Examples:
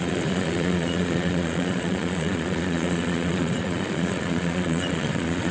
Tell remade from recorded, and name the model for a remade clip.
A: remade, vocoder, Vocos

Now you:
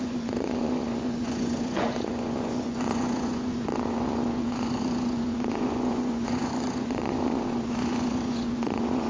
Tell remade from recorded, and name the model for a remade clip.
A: remade, vocoder, Vocos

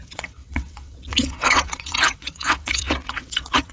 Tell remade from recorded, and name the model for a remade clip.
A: remade, vocoder, WaveNeXt